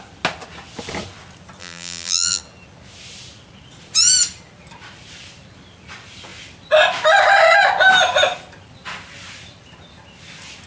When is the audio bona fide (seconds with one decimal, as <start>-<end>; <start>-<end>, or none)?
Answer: 0.0-1.6; 2.4-10.7